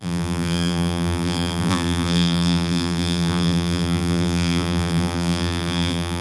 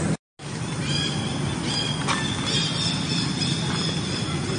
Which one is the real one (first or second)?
second